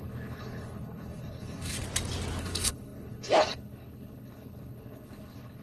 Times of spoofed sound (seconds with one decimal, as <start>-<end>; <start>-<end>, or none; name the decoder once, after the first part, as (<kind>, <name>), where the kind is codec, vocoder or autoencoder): 0.0-1.8 (codec, HILCodec); 2.4-5.6